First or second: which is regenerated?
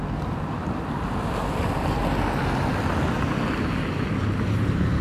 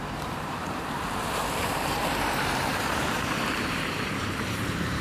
second